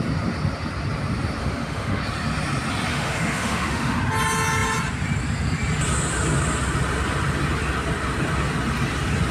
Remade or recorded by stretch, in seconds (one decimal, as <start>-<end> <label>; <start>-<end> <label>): 0.0-1.4 recorded; 1.4-2.0 remade; 2.0-2.9 recorded; 2.9-4.0 remade; 4.0-9.3 recorded